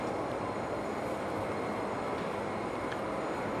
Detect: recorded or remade recorded